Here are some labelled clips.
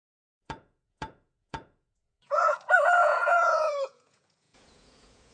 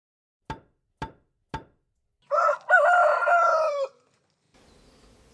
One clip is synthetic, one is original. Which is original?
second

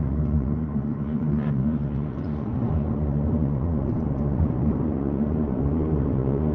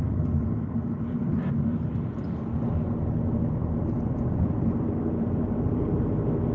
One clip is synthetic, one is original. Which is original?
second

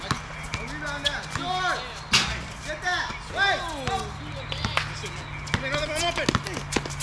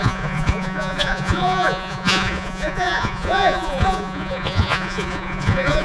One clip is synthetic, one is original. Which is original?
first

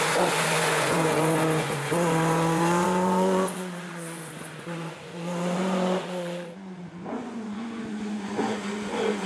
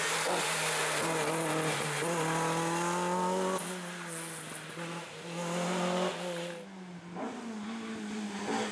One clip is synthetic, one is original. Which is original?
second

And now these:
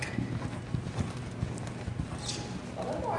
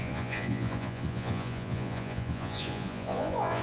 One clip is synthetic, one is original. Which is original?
first